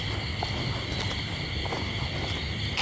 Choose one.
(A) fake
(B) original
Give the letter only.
B